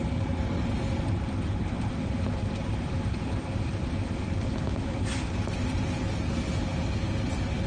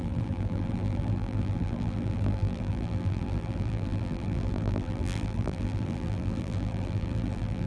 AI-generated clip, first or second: second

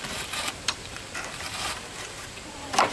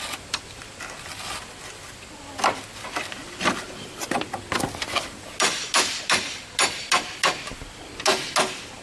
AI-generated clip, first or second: first